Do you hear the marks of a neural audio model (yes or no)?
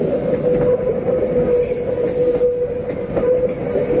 no